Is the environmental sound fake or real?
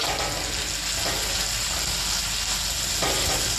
real